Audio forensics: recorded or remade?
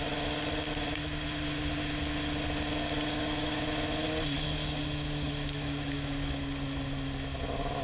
recorded